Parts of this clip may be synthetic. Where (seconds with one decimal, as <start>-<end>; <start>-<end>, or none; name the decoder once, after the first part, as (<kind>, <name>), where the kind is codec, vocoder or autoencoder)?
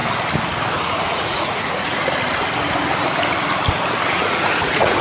0.8-2.0 (vocoder, Vocos); 4.1-5.0